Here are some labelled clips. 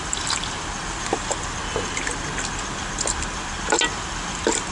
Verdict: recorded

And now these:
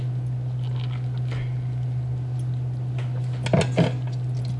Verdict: recorded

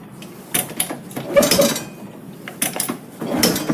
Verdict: recorded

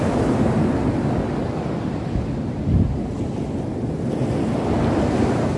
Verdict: recorded